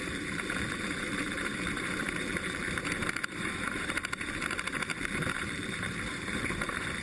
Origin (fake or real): fake